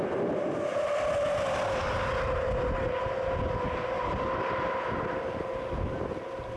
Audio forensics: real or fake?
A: real